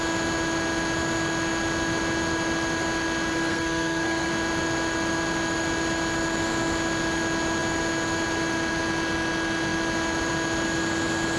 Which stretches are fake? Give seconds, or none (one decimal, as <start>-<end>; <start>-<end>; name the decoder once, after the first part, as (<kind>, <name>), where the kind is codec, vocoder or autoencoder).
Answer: 3.3-4.3 (codec, SNAC)